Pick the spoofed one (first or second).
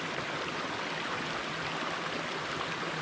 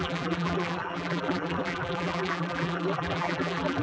second